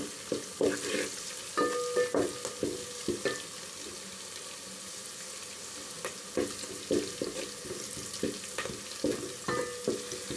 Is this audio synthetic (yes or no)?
no